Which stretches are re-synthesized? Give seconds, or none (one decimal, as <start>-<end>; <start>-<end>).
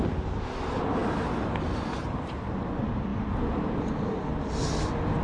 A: none